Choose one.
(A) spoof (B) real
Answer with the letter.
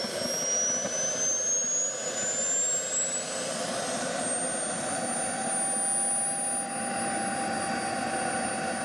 B